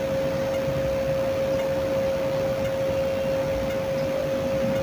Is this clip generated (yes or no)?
no